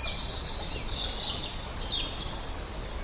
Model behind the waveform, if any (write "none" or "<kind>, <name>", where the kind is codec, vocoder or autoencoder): none